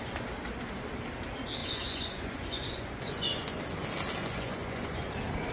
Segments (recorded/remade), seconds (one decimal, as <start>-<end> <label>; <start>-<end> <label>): 0.0-1.6 recorded; 1.6-3.6 remade; 3.6-4.2 recorded; 4.2-5.1 remade; 5.1-5.5 recorded